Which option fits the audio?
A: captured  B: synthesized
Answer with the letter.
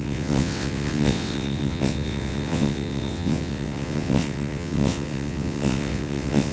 B